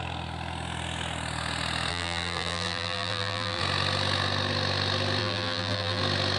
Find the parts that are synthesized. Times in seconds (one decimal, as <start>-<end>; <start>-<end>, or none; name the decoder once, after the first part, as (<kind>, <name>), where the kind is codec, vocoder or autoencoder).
1.9-3.6 (vocoder, BigVGAN v2); 5.2-6.0